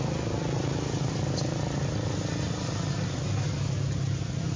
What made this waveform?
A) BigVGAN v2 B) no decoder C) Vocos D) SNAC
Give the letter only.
B